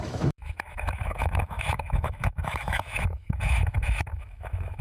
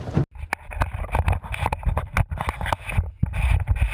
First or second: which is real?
second